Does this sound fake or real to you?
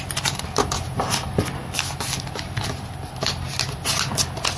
real